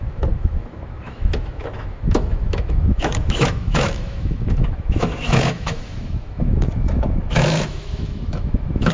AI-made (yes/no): yes